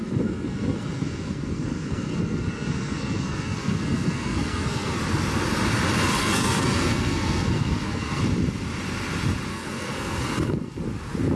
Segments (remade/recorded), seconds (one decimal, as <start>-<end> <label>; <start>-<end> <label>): 0.0-5.0 remade; 5.0-6.2 recorded; 6.2-8.2 remade; 8.2-9.5 recorded; 9.5-10.8 remade; 10.8-11.4 recorded

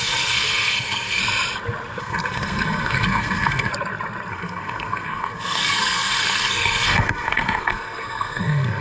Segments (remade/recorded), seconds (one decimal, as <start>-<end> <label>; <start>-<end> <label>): 0.0-1.2 remade; 1.2-2.0 recorded; 2.0-3.7 remade; 3.7-4.3 recorded; 4.3-8.8 remade

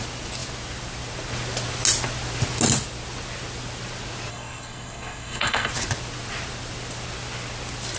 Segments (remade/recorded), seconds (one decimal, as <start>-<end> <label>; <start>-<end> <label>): 0.0-4.3 recorded; 4.3-5.7 remade; 5.7-8.0 recorded

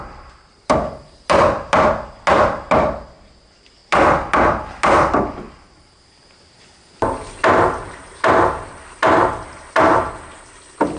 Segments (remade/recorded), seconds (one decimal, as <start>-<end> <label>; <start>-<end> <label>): 0.0-11.0 recorded

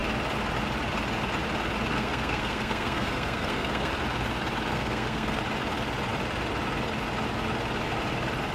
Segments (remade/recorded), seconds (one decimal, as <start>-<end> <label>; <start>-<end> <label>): 0.0-1.9 recorded; 1.9-3.9 remade; 3.9-4.7 recorded; 4.7-5.4 remade; 5.4-8.5 recorded

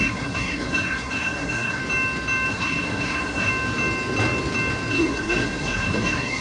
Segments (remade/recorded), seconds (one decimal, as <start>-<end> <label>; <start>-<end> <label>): 0.0-1.8 remade; 1.8-2.5 recorded; 2.5-3.5 remade; 3.5-4.9 recorded; 4.9-6.4 remade

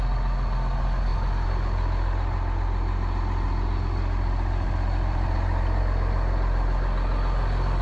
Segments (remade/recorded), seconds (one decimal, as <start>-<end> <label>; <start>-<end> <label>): 0.0-7.8 recorded